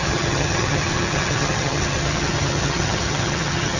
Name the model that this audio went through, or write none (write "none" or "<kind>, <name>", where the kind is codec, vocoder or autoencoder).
vocoder, HiFi-GAN